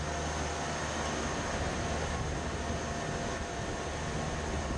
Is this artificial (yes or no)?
no